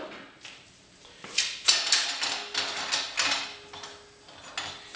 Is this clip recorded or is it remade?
recorded